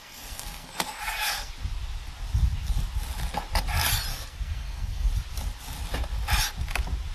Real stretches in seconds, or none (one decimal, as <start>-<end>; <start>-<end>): 1.5-4.1; 5.1-7.1